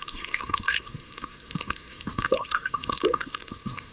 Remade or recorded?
remade